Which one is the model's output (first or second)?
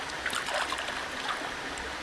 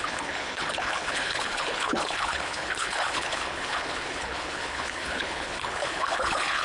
second